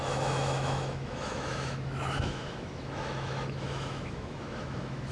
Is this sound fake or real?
fake